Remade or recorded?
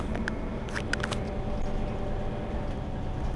recorded